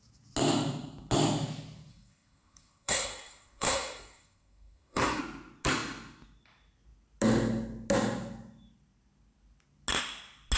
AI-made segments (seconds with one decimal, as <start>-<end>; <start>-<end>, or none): 1.9-5.2